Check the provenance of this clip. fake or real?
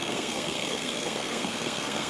fake